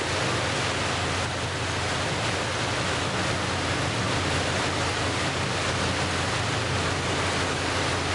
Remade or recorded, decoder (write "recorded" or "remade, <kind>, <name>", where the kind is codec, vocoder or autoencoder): recorded